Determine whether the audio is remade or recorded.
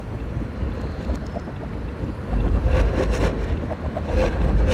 recorded